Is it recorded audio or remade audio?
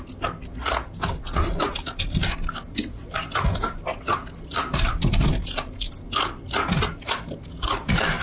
recorded